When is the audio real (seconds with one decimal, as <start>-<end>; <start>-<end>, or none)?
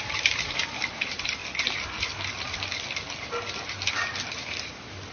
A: 1.4-4.2